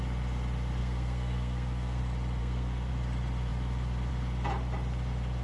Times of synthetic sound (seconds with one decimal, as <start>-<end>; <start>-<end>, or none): 0.8-2.0; 2.4-2.9